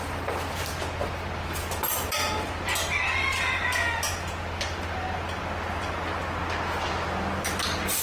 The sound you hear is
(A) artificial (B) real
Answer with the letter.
B